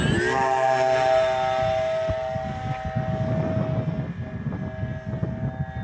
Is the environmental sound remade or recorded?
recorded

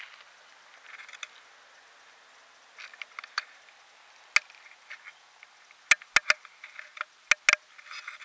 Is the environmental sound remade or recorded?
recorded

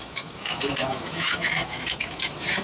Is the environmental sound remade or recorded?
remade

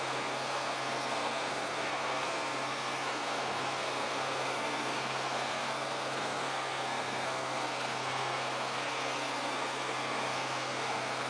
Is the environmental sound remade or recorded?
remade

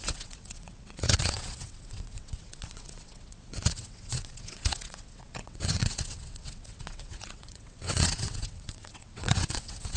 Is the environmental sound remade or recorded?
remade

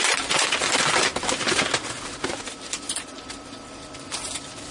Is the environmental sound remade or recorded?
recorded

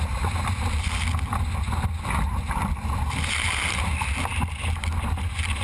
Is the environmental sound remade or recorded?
recorded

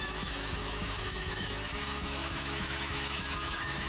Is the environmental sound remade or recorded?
remade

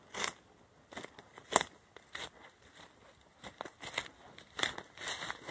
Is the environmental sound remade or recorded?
recorded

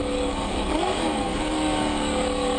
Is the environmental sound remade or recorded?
remade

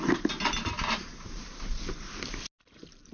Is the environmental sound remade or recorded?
recorded